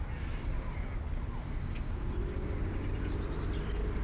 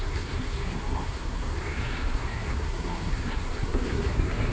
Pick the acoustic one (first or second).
first